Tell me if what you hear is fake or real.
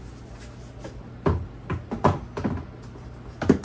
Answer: real